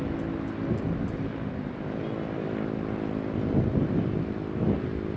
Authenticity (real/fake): real